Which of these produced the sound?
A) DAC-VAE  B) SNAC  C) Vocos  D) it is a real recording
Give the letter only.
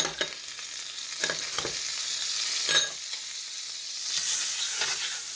D